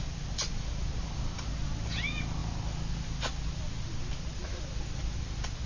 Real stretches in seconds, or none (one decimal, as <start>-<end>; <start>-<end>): 0.0-5.7